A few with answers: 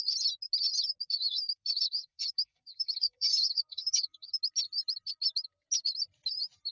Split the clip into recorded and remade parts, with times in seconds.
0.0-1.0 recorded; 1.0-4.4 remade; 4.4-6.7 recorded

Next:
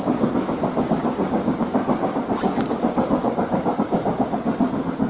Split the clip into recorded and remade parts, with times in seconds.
0.0-1.0 recorded; 1.0-2.8 remade; 2.8-3.2 recorded; 3.2-3.8 remade; 3.8-5.1 recorded

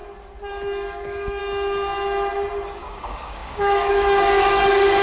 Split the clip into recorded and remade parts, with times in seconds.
0.0-0.9 recorded; 0.9-1.4 remade; 1.4-2.8 recorded; 2.8-5.0 remade

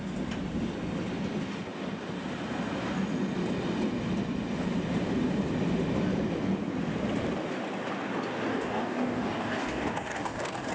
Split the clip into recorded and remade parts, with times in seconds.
0.0-8.5 recorded; 8.5-10.7 remade

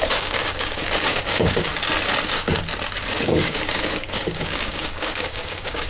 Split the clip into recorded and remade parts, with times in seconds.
0.0-1.7 remade; 1.7-2.2 recorded; 2.2-2.6 remade; 2.6-3.1 recorded; 3.1-5.9 remade

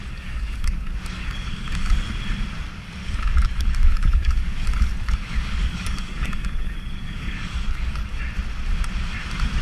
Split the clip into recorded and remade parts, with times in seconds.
0.0-1.9 remade; 1.9-3.0 recorded; 3.0-8.2 remade; 8.2-9.6 recorded

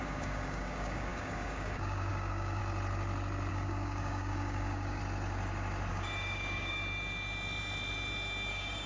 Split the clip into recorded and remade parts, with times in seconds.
0.0-2.6 remade; 2.6-3.5 recorded; 3.5-5.0 remade; 5.0-5.9 recorded; 5.9-6.8 remade; 6.8-8.5 recorded; 8.5-8.9 remade